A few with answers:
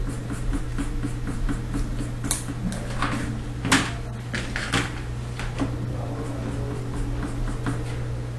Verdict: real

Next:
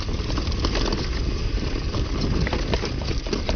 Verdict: real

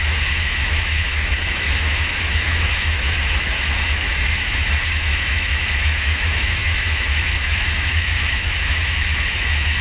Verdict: fake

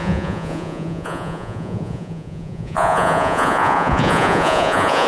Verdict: fake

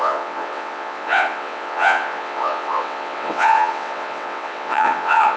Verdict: fake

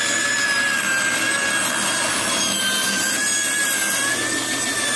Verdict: real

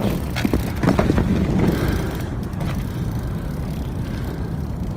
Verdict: real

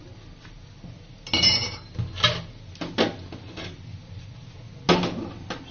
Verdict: real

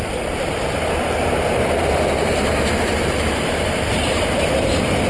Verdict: fake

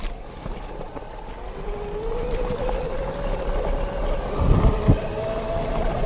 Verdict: real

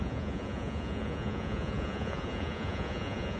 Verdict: fake